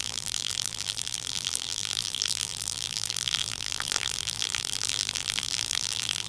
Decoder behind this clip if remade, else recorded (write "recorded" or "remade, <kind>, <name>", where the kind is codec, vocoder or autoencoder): remade, vocoder, BigVGAN v2